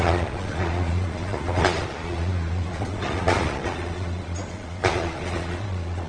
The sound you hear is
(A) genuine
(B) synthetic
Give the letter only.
B